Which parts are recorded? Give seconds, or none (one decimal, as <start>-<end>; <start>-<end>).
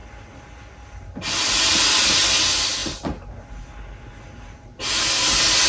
0.0-5.7